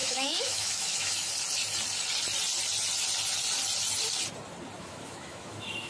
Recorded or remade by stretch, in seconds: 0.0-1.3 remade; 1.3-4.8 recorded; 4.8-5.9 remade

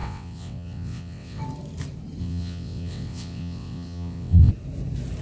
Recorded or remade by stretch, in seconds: 0.0-1.4 remade; 1.4-2.2 recorded; 2.2-4.5 remade; 4.5-5.2 recorded